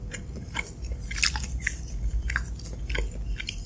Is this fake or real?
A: real